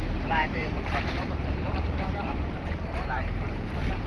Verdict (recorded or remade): remade